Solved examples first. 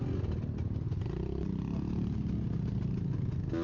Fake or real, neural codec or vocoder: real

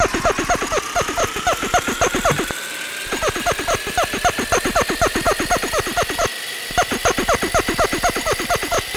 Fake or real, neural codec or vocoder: real